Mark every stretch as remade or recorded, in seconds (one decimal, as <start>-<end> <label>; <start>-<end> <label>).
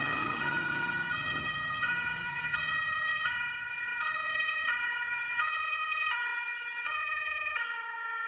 0.0-8.3 remade